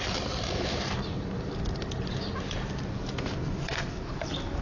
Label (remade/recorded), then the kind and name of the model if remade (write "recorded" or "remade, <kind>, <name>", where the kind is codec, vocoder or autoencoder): recorded